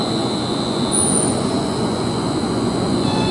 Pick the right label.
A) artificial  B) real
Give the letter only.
A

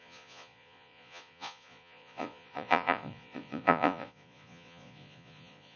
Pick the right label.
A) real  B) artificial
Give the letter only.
B